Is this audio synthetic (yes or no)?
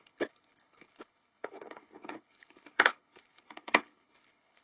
yes